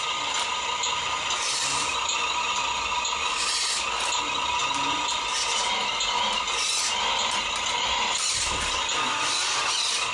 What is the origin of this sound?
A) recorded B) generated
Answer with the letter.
A